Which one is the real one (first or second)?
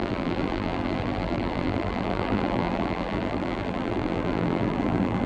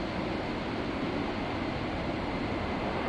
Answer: second